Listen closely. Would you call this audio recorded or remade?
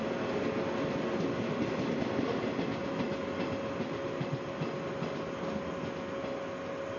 recorded